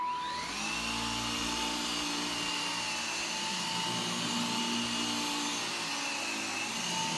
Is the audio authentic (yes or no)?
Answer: yes